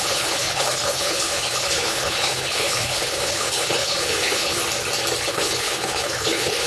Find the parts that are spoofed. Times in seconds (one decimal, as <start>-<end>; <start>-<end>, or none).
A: 0.0-4.6; 5.3-6.7